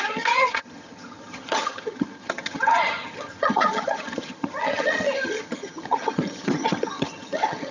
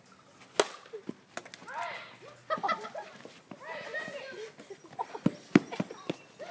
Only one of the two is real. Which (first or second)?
second